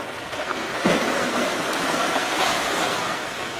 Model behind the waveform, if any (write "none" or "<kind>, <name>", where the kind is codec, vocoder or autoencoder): codec, SNAC